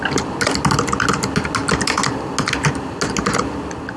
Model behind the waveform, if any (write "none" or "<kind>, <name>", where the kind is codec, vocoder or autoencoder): none